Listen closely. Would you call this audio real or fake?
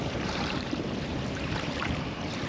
fake